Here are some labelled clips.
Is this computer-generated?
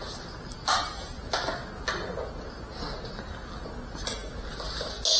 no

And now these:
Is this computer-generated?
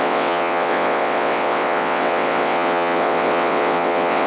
yes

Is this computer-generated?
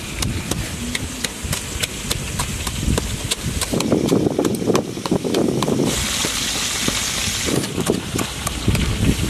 no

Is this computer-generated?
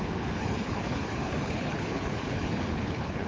yes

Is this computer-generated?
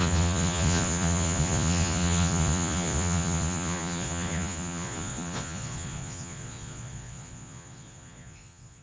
yes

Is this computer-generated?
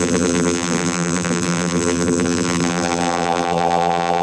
yes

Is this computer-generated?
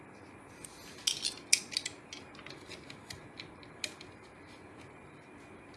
no